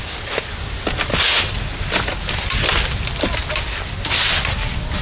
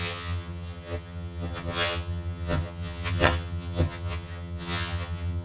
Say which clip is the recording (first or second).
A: first